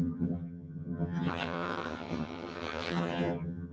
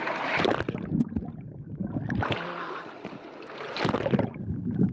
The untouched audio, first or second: second